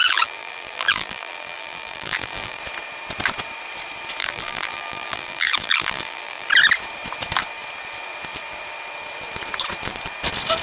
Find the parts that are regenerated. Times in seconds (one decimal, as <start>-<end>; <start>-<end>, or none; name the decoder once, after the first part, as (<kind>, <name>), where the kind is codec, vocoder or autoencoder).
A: 0.0-2.6 (vocoder, BigVGAN v2); 4.2-6.5